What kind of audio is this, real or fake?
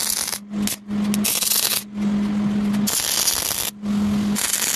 real